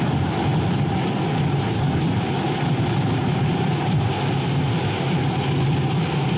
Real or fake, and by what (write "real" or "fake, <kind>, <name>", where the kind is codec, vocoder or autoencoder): real